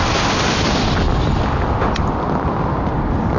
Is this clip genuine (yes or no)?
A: yes